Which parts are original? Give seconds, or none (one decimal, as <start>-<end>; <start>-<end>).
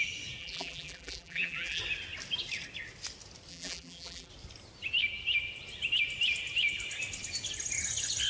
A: 0.0-0.4; 1.8-3.5; 4.3-8.3